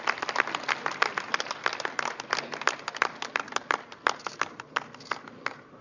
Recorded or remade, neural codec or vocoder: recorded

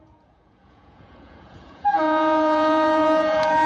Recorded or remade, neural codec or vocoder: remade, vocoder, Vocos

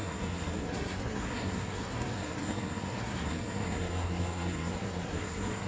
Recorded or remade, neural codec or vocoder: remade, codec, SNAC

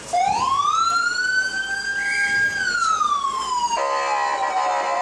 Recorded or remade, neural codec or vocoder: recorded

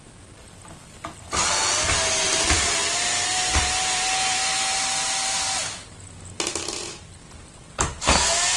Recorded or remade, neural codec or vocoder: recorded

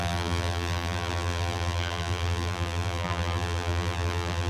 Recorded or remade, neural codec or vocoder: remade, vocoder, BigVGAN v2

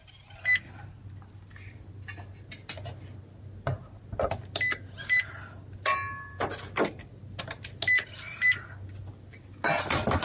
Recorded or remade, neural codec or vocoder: recorded